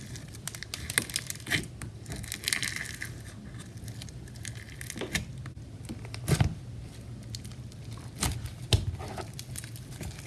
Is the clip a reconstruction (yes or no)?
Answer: no